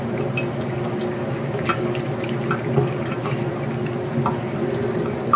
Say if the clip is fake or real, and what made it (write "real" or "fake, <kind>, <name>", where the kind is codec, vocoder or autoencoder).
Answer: real